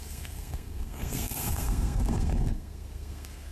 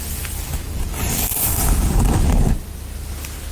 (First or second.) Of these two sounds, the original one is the second